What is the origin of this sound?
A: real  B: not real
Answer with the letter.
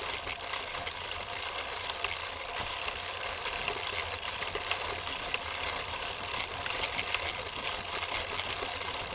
A